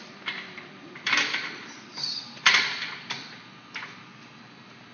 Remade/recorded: remade